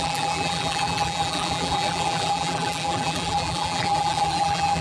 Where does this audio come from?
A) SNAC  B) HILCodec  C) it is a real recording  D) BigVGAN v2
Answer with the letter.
D